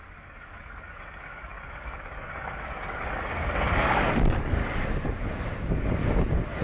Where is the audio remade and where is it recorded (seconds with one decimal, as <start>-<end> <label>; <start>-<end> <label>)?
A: 0.0-4.6 remade; 4.6-6.6 recorded